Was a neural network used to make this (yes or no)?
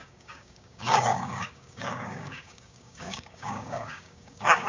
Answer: yes